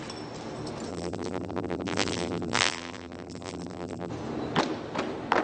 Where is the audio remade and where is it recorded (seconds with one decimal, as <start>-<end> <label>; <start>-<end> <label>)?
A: 0.0-0.9 recorded; 0.9-4.1 remade; 4.1-5.4 recorded